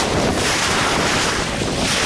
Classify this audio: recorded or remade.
recorded